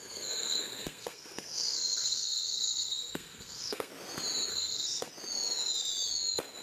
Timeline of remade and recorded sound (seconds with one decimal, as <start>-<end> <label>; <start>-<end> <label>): 0.0-3.9 remade; 3.9-4.5 recorded; 4.5-5.1 remade; 5.1-6.6 recorded